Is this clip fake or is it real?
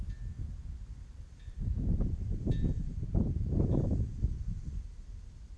real